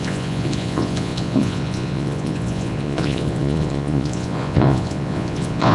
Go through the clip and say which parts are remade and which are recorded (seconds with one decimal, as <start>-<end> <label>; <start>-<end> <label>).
0.0-5.7 remade